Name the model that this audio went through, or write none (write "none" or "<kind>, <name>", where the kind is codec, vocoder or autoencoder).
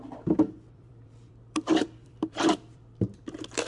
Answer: vocoder, BigVGAN v2